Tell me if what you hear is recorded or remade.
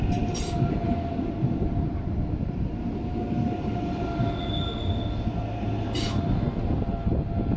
recorded